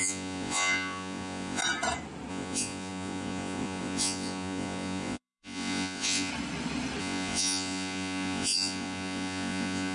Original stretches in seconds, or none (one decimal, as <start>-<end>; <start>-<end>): 1.6-2.3; 6.3-7.0